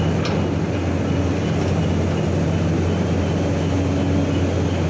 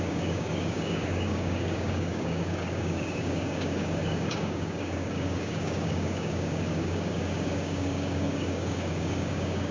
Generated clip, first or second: second